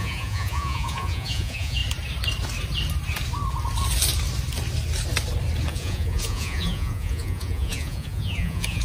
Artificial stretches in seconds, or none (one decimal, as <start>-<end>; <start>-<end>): 0.0-1.8; 5.7-8.8